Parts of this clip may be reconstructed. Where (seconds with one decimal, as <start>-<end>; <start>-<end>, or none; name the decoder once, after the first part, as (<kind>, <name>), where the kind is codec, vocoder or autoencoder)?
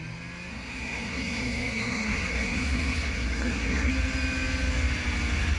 0.5-3.9 (codec, SNAC)